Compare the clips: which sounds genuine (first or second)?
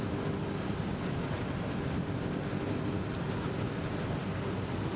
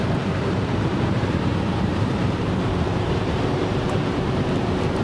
first